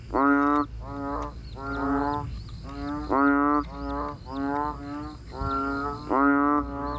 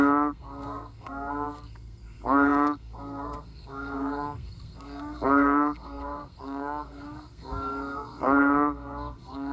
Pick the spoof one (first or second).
second